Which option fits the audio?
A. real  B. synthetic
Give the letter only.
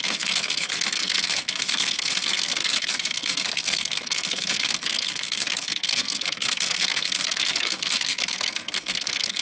B